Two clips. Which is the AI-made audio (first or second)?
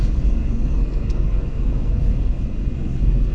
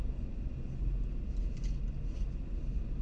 first